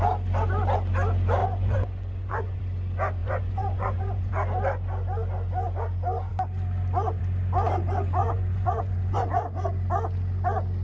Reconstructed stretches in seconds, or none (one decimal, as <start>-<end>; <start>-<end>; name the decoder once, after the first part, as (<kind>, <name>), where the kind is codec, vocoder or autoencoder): 1.4-2.6 (vocoder, Vocos); 3.2-4.3; 8.2-9.4